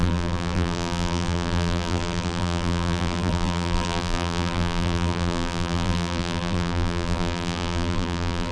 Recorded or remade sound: remade